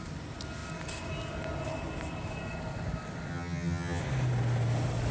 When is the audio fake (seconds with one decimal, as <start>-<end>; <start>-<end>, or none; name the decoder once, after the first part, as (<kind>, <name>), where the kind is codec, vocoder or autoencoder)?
3.3-4.0 (vocoder, HiFi-GAN)